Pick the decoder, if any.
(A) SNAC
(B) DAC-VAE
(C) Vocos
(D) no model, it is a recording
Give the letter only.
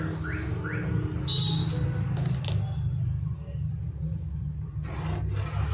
D